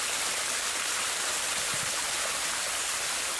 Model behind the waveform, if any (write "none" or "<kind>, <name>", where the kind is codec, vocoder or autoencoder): vocoder, BigVGAN v2